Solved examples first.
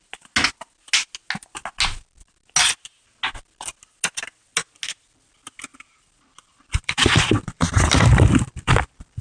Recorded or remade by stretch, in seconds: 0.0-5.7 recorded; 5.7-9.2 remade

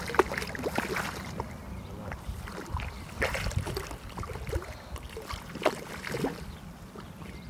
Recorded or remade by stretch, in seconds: 0.0-7.5 recorded

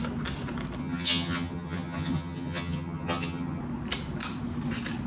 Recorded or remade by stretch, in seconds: 0.0-0.8 recorded; 0.8-3.6 remade; 3.6-5.1 recorded

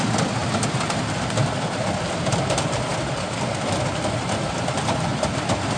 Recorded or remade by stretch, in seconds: 0.0-0.4 remade; 0.4-2.0 recorded; 2.0-5.8 remade

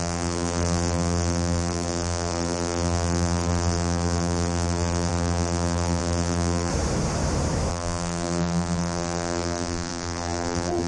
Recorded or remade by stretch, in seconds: 0.0-6.7 remade; 6.7-7.7 recorded; 7.7-10.9 remade

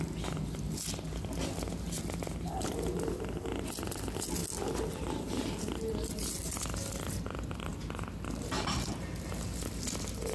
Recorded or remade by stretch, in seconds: 0.0-10.3 recorded